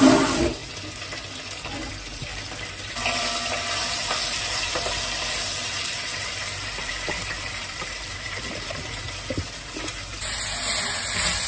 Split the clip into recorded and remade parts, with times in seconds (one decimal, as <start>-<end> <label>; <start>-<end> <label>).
0.0-2.1 recorded; 2.1-3.2 remade; 3.2-3.8 recorded; 3.8-8.6 remade; 8.6-10.1 recorded; 10.1-11.0 remade; 11.0-11.5 recorded